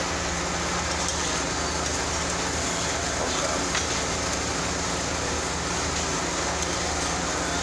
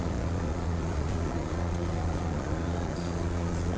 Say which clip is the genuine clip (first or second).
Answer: first